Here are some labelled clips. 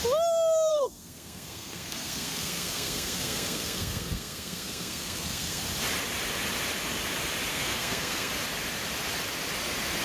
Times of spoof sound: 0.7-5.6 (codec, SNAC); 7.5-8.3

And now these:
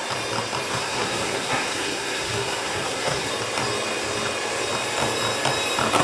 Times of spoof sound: 0.7-3.3 (codec, SNAC)

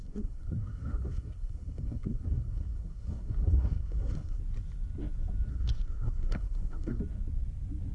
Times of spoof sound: 0.0-4.4 (codec, SNAC); 5.5-7.0

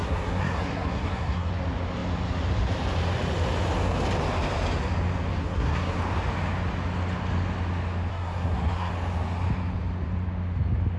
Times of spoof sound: 0.0-1.5 (codec, SNAC); 5.4-6.0; 8.1-8.9

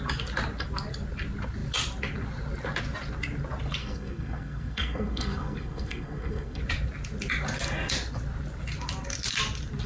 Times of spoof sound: 3.8-6.6 (codec, SNAC)

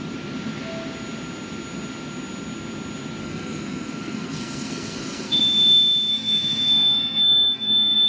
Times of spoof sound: 3.2-5.4 (codec, SNAC); 6.1-8.1

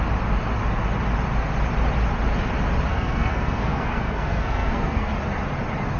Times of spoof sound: 2.9-5.1 (codec, SNAC)